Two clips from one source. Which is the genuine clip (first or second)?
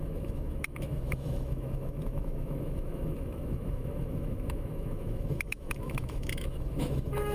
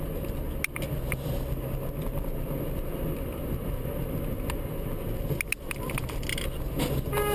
second